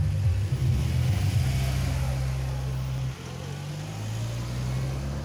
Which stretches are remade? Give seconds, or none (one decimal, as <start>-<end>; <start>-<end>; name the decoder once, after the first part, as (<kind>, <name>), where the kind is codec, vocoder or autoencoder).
none